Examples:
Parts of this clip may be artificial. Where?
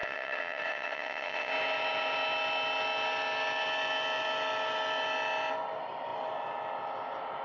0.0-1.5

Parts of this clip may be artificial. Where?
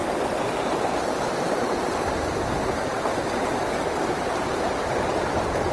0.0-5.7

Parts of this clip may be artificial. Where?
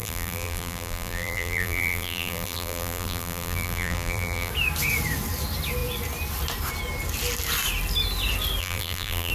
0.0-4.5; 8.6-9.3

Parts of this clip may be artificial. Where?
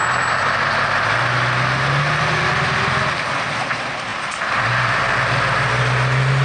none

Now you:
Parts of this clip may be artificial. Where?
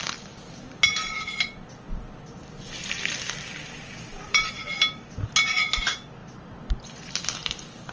none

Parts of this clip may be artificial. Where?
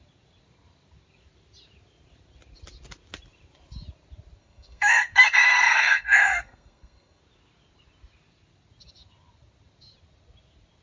4.4-7.2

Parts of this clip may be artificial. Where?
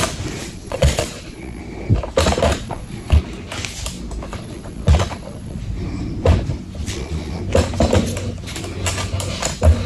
0.4-1.6; 2.5-3.2; 4.3-5.6; 6.8-7.4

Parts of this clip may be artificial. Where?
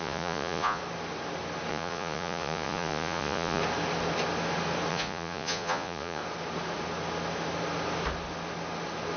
0.0-0.8; 1.7-3.6; 4.9-6.2